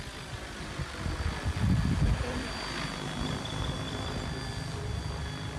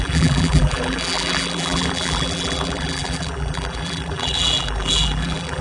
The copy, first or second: second